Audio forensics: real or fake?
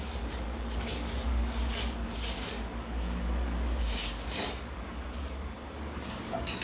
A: fake